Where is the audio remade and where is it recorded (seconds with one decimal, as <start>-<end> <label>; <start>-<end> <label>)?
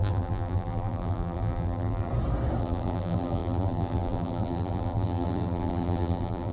0.0-2.1 remade; 2.1-2.6 recorded; 2.6-6.5 remade